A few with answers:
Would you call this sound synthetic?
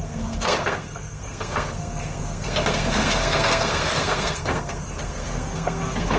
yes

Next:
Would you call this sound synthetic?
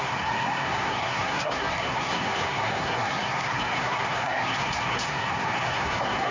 yes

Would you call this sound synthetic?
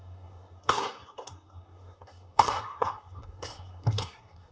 yes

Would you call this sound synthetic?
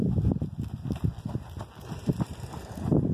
no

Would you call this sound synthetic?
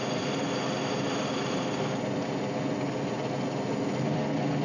no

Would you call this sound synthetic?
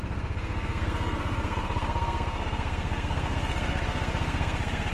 yes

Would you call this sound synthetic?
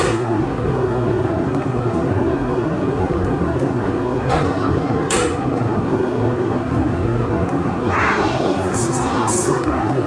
yes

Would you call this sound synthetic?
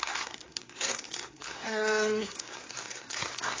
yes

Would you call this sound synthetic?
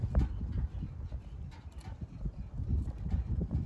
no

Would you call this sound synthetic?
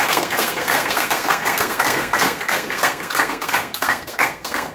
yes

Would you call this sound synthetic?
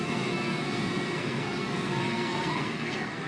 yes